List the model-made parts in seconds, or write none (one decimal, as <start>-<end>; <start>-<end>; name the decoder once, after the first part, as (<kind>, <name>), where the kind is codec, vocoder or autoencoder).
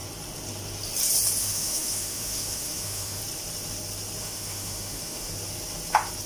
1.4-3.2 (autoencoder, DAC-VAE); 4.2-5.3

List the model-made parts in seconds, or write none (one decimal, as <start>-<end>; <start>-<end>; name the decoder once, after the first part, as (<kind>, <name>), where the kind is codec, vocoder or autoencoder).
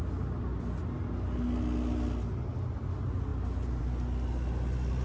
none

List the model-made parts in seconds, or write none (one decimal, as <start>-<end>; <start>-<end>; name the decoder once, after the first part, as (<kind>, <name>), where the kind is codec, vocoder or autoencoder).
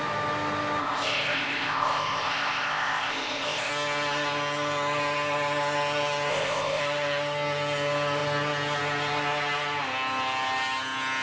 0.8-3.7 (codec, ZipCodec); 6.3-6.8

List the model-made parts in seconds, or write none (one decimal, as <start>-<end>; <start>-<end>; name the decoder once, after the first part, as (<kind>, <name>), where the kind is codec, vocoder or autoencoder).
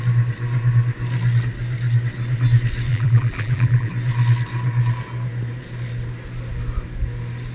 2.9-3.9 (vocoder, BigVGAN v2)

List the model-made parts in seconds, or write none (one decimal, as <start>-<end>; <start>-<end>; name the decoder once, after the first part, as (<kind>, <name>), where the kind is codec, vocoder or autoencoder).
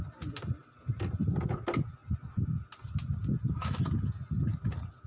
none